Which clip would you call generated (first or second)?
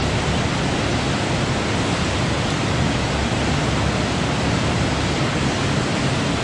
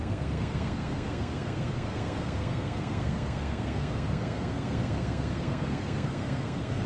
second